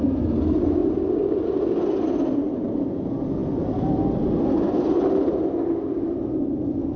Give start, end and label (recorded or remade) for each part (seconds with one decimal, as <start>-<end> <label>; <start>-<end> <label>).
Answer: 0.0-7.0 recorded

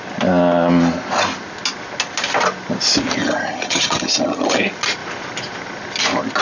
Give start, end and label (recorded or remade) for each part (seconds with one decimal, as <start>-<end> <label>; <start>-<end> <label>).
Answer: 0.0-3.2 recorded; 3.2-4.6 remade; 4.6-6.4 recorded

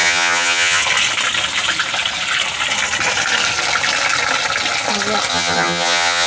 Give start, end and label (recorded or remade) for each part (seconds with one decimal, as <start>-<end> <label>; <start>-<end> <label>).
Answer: 0.0-0.8 remade; 0.8-5.3 recorded; 5.3-6.3 remade